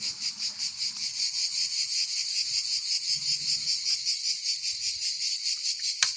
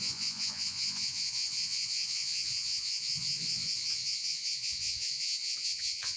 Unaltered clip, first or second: first